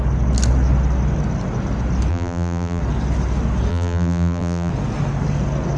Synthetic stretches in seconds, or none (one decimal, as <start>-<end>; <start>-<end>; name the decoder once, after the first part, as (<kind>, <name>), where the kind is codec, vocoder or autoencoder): 2.1-2.8 (vocoder, BigVGAN v2); 3.7-4.7